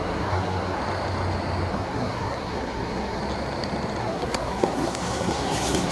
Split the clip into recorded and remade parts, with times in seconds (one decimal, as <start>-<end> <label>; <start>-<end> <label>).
0.0-0.8 remade; 0.8-1.7 recorded; 1.7-3.2 remade; 3.2-4.0 recorded; 4.0-5.9 remade